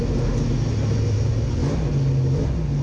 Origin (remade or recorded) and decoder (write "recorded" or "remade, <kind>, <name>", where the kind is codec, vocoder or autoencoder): recorded